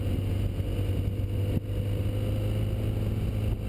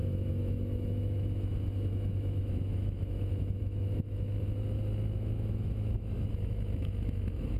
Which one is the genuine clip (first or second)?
first